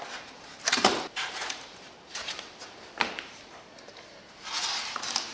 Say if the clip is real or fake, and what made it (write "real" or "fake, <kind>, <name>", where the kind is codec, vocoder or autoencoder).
fake, vocoder, BigVGAN v2